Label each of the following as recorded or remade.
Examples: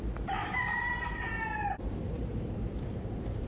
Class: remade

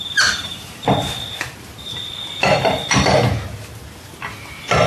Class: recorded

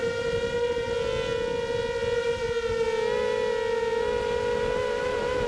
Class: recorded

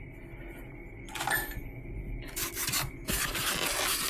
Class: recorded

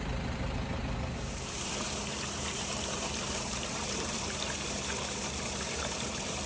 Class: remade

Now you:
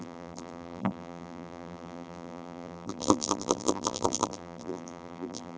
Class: remade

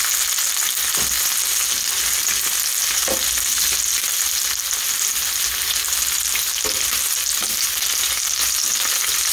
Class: recorded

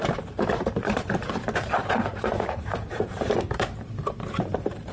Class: remade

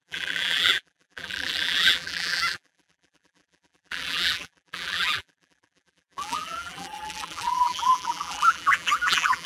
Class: remade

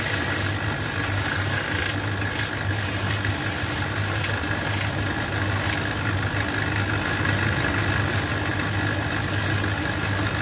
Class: recorded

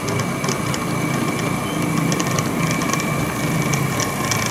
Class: recorded